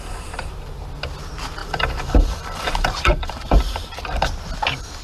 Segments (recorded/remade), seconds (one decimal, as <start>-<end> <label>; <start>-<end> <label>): 0.0-1.6 recorded; 1.6-4.0 remade; 4.0-5.0 recorded